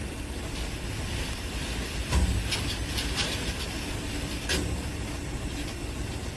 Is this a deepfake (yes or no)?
no